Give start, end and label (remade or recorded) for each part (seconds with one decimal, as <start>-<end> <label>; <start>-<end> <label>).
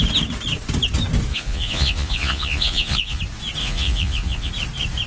0.0-1.3 recorded; 1.3-3.2 remade; 3.2-3.6 recorded; 3.6-4.5 remade; 4.5-5.1 recorded